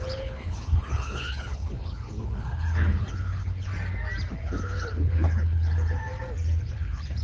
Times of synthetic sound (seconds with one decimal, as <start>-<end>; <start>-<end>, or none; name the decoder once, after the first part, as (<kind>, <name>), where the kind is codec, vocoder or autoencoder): 0.0-3.7 (codec, HILCodec); 4.3-6.0; 6.6-7.2